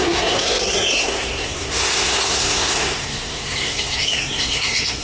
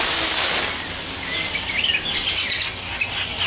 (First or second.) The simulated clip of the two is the first